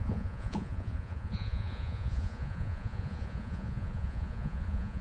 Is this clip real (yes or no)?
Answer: no